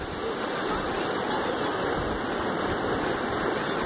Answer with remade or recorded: recorded